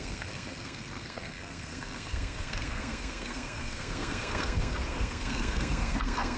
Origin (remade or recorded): remade